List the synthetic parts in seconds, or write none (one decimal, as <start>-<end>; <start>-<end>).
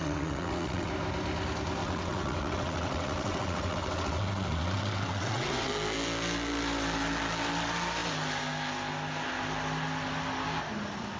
0.0-0.9; 1.8-5.7